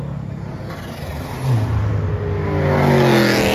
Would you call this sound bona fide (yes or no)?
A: yes